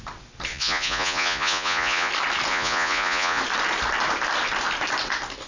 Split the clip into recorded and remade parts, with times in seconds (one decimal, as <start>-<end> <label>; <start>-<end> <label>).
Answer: 0.0-0.5 recorded; 0.5-2.1 remade; 2.1-2.5 recorded; 2.5-3.4 remade; 3.4-5.5 recorded